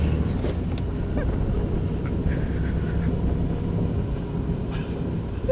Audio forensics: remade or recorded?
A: recorded